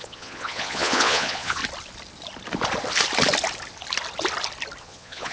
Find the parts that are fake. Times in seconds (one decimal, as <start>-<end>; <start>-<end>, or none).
0.0-1.6; 4.8-5.3